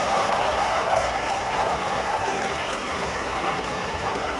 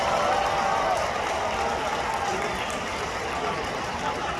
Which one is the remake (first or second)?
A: first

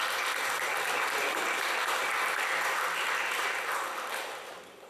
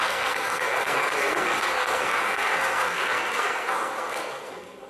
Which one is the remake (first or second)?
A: second